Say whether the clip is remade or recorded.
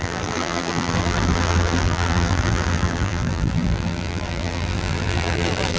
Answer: remade